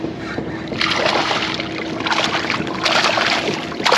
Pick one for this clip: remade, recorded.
recorded